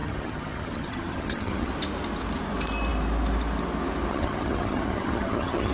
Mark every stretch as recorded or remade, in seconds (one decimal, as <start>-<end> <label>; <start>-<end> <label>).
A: 0.0-1.7 remade; 1.7-4.1 recorded; 4.1-5.7 remade